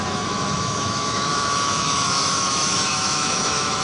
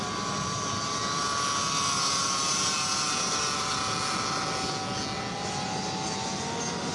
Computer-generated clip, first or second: first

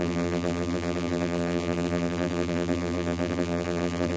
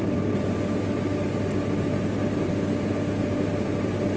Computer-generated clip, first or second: first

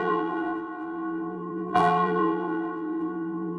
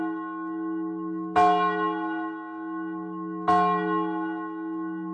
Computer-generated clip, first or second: first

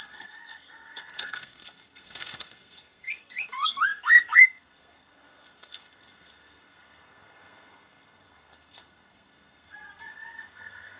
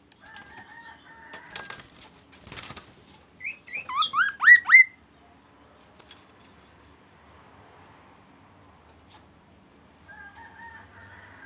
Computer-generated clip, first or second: first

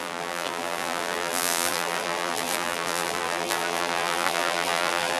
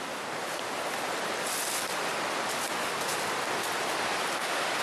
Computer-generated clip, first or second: first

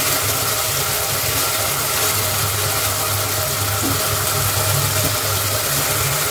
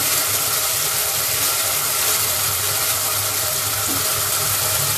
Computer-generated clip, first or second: second